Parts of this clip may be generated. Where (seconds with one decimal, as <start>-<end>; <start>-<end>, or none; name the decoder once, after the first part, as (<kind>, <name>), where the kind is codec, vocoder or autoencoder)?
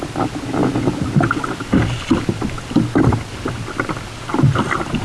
none